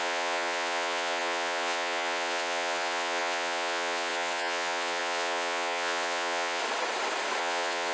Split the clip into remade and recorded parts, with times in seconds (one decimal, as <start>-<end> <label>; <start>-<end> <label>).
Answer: 0.0-6.6 remade; 6.6-7.4 recorded; 7.4-7.9 remade